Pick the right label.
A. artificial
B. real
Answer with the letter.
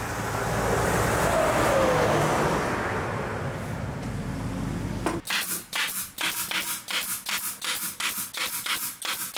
B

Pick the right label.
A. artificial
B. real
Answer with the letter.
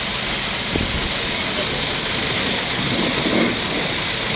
B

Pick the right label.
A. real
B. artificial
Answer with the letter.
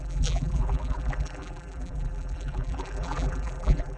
B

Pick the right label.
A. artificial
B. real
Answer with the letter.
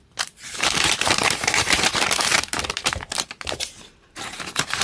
A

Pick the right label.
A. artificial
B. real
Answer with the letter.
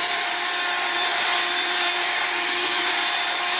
A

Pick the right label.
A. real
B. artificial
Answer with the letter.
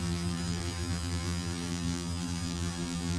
B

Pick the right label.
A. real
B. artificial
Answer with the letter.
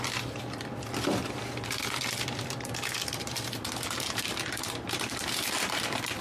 B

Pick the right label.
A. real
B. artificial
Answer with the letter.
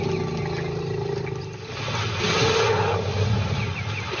A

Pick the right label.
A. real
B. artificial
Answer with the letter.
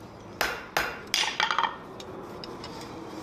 A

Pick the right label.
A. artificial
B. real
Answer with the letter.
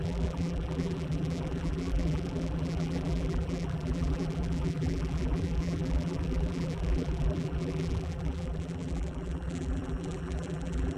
A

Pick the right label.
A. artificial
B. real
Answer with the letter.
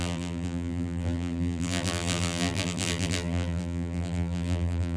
A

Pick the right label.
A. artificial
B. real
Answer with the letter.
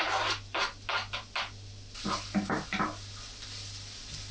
B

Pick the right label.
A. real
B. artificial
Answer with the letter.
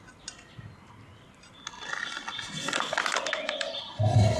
A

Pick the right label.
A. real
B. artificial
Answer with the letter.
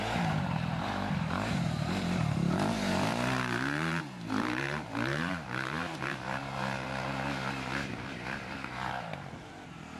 B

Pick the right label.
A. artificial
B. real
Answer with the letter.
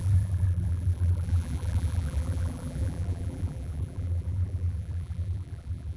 A